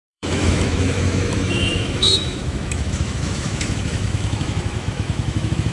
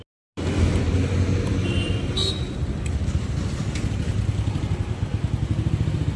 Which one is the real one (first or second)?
second